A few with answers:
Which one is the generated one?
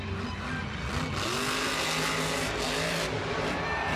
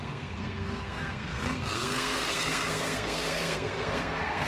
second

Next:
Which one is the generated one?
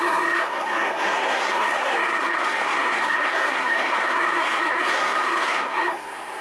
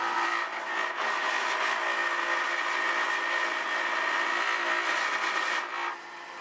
first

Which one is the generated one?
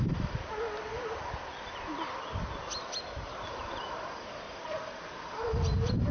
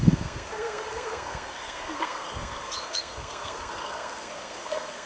second